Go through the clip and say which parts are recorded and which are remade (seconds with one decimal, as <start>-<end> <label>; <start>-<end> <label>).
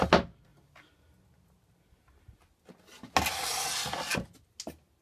0.0-5.0 recorded